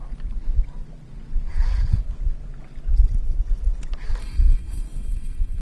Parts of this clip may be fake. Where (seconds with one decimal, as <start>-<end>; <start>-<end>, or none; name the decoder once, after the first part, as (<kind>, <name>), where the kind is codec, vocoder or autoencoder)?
4.2-5.6 (codec, SNAC)